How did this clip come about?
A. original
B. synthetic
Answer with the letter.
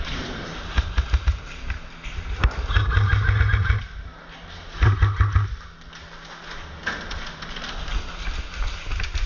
A